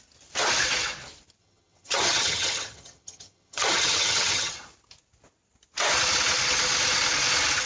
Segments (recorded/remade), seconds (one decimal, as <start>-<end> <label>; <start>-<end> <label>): 0.0-1.4 recorded; 1.4-4.5 remade; 4.5-7.7 recorded